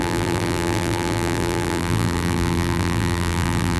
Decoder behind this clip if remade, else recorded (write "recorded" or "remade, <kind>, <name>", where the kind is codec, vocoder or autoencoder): remade, vocoder, BigVGAN v2